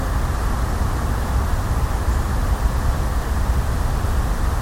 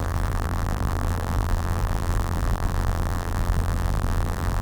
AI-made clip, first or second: second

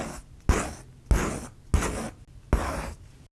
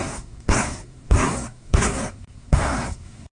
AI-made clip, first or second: second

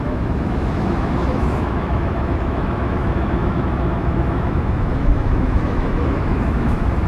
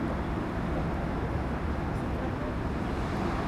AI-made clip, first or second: first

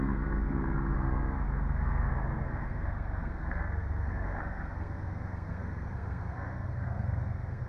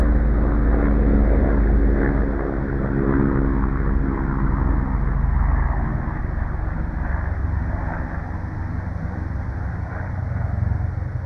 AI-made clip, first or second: first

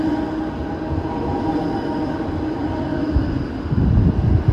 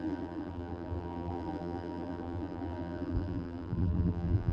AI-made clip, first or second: second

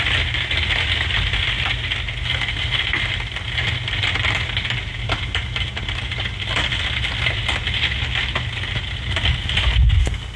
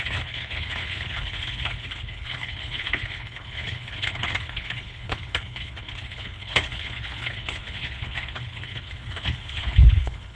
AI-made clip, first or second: second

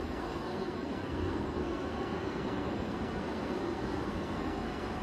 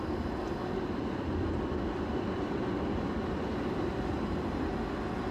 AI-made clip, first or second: first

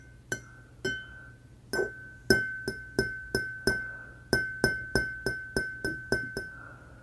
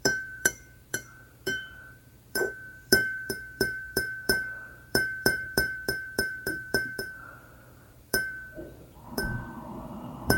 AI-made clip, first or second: second